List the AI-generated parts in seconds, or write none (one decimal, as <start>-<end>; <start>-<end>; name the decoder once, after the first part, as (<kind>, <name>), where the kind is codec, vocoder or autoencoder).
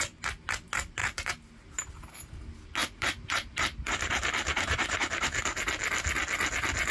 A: 1.0-1.9 (vocoder, BigVGAN v2); 2.8-5.4